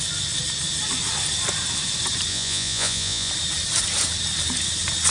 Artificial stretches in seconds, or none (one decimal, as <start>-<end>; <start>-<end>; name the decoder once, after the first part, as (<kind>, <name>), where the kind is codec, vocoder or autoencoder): 2.3-3.3 (vocoder, Vocos)